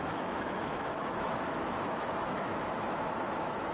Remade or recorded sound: remade